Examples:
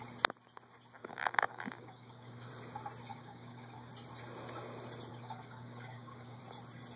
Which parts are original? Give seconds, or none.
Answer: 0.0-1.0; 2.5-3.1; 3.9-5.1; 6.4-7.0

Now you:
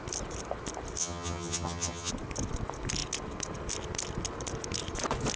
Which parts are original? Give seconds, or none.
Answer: 0.0-1.0; 2.1-5.4

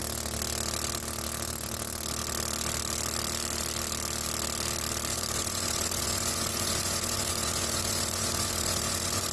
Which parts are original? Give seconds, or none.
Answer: 0.0-5.1

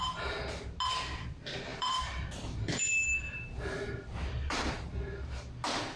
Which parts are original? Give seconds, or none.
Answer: 0.0-1.7; 4.7-6.0

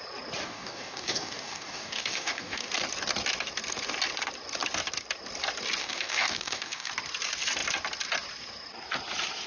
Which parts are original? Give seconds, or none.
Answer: 0.0-0.4; 2.7-5.8; 6.9-9.5

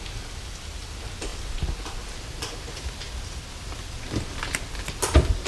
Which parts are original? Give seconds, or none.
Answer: 0.0-5.5